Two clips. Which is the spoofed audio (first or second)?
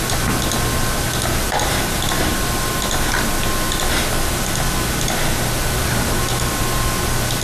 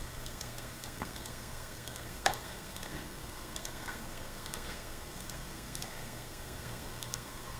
second